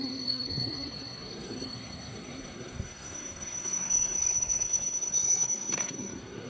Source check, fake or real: fake